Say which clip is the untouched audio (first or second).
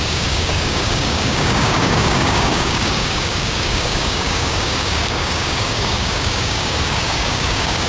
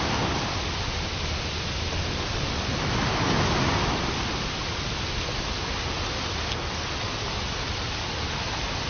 second